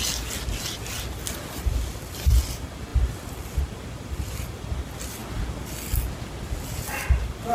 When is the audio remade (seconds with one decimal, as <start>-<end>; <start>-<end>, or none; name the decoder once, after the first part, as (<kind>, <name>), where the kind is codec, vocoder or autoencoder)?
none